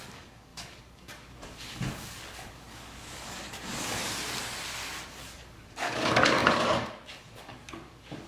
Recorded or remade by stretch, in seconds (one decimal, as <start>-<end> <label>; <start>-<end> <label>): 0.0-4.0 remade; 4.0-5.1 recorded; 5.1-8.3 remade